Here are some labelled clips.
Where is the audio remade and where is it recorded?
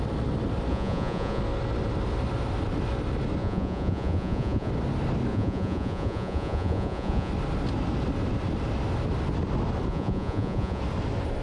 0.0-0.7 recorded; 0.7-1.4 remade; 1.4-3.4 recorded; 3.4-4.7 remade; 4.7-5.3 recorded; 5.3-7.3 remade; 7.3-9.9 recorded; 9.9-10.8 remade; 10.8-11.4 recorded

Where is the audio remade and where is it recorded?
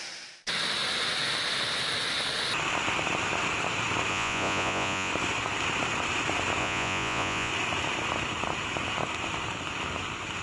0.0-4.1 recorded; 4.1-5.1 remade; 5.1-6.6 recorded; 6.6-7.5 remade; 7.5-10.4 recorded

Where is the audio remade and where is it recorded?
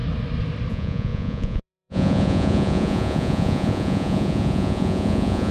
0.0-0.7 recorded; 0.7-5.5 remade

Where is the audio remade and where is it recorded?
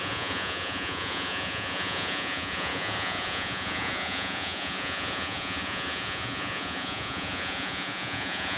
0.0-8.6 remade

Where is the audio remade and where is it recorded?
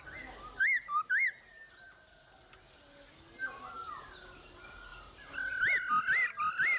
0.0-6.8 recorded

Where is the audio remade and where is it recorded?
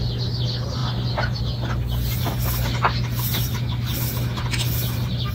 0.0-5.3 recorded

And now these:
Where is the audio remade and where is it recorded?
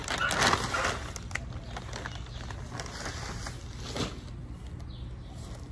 0.0-5.7 recorded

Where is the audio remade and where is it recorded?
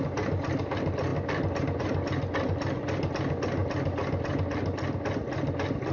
0.0-5.9 recorded